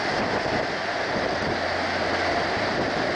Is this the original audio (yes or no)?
yes